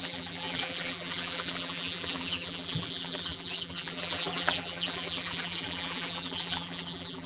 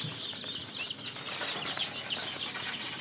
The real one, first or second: second